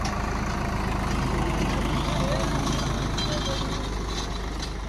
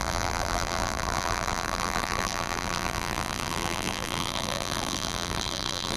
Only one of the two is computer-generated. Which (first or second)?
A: second